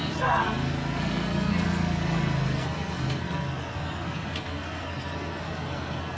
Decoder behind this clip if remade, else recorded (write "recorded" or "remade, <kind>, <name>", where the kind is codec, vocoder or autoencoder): remade, codec, SNAC